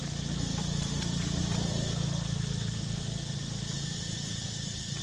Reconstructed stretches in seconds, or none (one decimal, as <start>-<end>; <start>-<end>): 0.5-1.4